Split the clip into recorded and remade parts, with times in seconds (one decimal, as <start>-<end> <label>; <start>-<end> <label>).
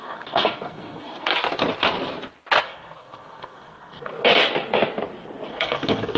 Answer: 0.0-1.3 remade; 1.3-2.6 recorded; 2.6-4.1 remade; 4.1-5.5 recorded; 5.5-6.2 remade